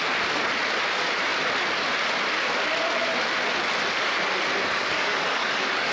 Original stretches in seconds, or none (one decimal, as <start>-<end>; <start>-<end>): 0.0-4.8